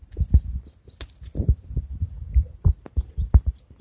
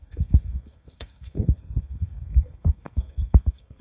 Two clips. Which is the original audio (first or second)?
first